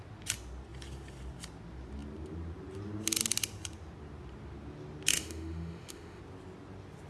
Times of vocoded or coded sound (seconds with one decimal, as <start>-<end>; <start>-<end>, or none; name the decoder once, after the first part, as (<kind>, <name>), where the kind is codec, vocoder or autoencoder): 5.1-6.2 (autoencoder, DAC-VAE)